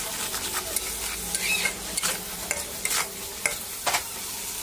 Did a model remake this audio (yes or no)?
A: no